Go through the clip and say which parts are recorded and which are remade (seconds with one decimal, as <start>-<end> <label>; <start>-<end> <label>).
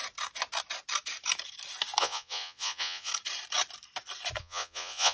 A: 0.0-2.0 recorded; 2.0-3.1 remade; 3.1-4.4 recorded; 4.4-5.1 remade